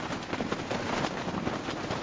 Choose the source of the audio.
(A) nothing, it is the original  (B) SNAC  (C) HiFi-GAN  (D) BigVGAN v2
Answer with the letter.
A